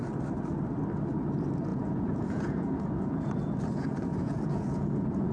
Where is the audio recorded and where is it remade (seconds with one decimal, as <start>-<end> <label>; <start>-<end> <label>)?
0.0-1.7 recorded; 1.7-5.3 remade